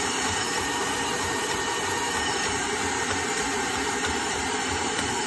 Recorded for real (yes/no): no